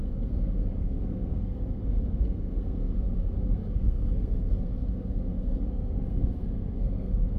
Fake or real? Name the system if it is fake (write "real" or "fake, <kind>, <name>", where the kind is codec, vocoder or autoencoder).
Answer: fake, codec, SNAC